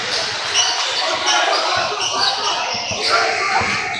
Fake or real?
real